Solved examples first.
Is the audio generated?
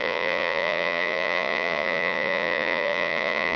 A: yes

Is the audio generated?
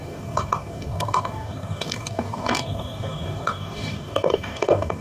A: yes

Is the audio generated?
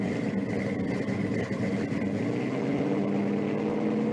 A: no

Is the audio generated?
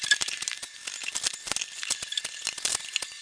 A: no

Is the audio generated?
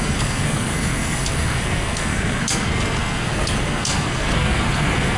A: yes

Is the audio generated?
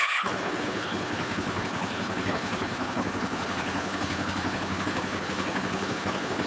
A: yes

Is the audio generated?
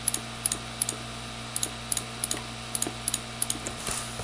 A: no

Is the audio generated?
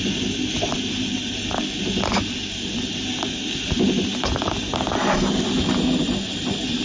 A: no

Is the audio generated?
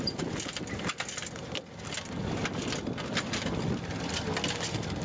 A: no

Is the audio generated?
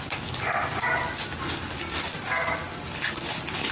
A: no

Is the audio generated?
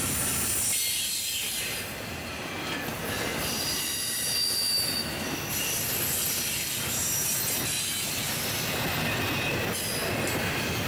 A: no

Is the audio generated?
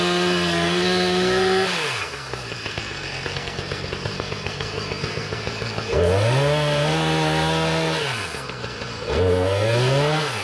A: yes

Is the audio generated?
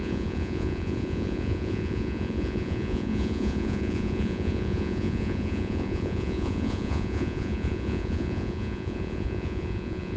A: yes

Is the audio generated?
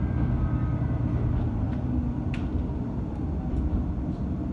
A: no